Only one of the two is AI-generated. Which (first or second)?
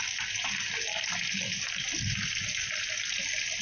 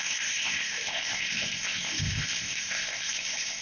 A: second